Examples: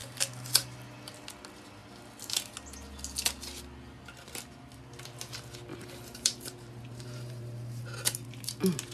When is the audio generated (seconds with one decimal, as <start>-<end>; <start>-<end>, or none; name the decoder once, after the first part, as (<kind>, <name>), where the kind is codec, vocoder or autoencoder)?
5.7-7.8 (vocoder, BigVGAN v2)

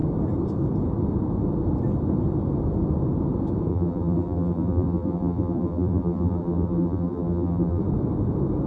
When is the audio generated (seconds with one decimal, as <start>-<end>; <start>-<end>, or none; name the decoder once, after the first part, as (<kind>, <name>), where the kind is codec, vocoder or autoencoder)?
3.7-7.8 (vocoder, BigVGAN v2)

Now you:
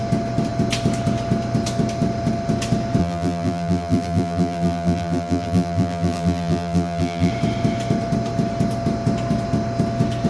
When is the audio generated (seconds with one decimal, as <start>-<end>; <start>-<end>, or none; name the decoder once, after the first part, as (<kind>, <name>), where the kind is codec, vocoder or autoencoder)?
3.0-7.3 (vocoder, BigVGAN v2)

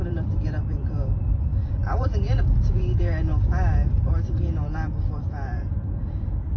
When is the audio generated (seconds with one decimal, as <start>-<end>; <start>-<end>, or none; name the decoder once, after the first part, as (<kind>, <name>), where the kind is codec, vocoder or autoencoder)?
0.0-6.6 (vocoder, BigVGAN v2)